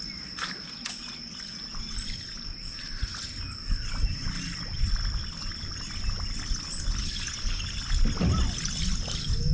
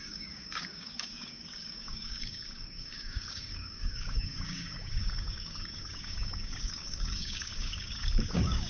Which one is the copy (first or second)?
second